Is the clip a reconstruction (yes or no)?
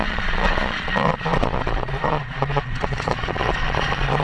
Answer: yes